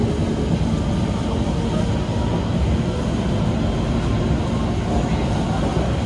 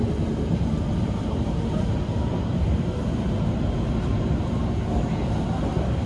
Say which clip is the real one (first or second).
first